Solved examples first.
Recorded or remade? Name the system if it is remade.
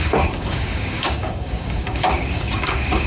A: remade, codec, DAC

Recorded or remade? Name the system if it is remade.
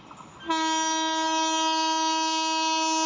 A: recorded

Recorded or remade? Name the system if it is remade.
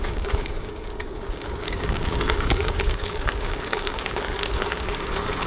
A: remade, codec, DAC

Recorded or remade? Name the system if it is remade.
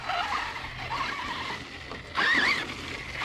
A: recorded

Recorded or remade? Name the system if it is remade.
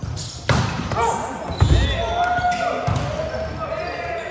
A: recorded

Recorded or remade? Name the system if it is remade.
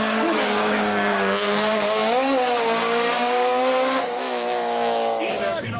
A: remade, codec, DAC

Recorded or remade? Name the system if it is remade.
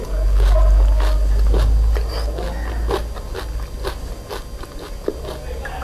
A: recorded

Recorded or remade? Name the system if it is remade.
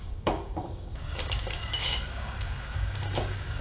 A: remade, codec, DAC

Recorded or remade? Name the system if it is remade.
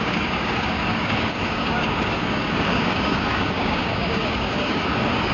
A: remade, codec, DAC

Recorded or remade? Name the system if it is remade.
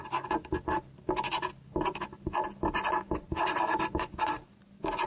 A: recorded